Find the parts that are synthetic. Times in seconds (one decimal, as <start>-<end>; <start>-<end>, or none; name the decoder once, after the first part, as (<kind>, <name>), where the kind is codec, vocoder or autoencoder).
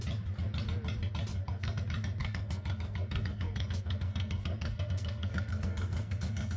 1.3-1.8 (codec, SNAC); 2.2-6.6